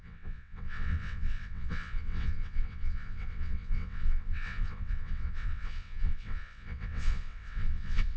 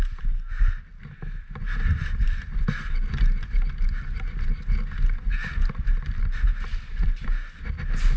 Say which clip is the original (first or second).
second